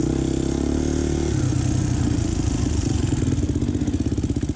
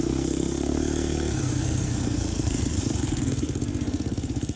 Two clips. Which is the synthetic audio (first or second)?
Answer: second